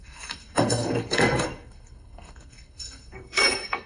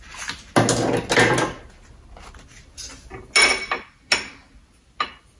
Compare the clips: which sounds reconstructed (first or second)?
first